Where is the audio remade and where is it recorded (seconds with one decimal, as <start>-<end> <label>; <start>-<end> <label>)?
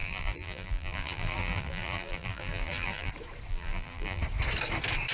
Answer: 0.0-3.1 remade; 3.1-3.5 recorded; 3.5-4.2 remade; 4.2-5.1 recorded